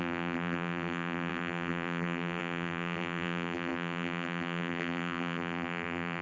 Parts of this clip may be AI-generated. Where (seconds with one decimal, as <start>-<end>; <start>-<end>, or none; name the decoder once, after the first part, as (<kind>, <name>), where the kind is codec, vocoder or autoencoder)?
0.0-6.2 (vocoder, BigVGAN v2)